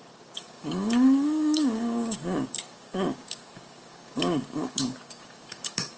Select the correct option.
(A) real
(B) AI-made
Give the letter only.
B